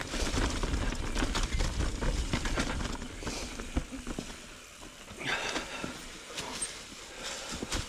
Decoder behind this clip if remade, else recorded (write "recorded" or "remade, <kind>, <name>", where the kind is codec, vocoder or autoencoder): recorded